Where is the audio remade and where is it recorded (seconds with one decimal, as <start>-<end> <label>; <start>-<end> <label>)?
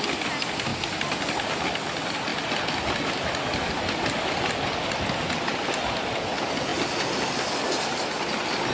0.0-8.7 recorded